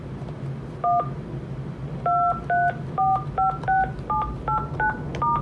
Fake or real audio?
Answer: real